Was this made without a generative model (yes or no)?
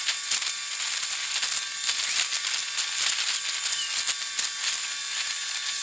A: yes